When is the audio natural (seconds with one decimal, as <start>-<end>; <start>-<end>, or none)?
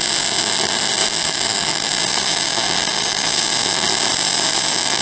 0.0-1.0; 1.9-5.0